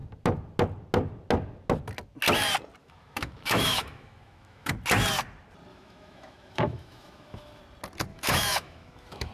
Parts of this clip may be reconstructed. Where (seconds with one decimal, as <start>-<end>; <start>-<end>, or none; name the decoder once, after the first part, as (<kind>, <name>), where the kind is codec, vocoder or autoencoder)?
2.8-4.7 (autoencoder, DAC-VAE); 5.7-7.6; 8.1-9.3